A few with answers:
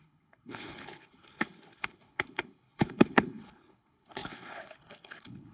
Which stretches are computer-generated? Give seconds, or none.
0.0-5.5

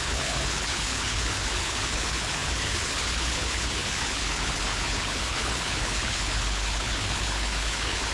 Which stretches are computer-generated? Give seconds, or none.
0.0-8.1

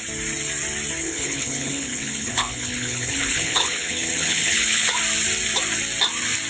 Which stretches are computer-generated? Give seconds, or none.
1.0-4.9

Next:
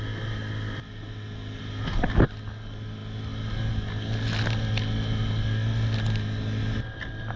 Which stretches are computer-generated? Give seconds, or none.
none